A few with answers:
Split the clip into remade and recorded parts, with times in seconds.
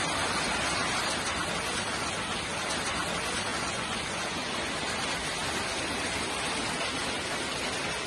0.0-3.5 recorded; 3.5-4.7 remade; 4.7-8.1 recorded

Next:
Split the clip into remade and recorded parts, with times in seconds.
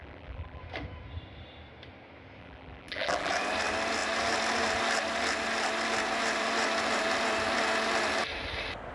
0.0-0.6 remade; 0.6-2.4 recorded; 2.4-3.3 remade; 3.3-8.9 recorded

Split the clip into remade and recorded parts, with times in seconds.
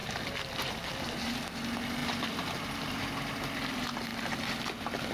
0.0-0.9 remade; 0.9-2.0 recorded; 2.0-2.9 remade; 2.9-4.1 recorded; 4.1-5.1 remade